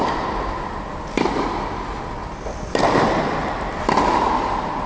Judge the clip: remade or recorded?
remade